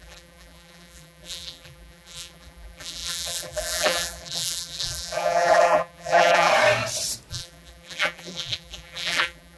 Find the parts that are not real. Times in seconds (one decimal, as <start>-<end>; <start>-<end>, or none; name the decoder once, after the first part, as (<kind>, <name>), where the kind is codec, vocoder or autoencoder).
0.0-6.5 (vocoder, BigVGAN v2); 7.3-9.6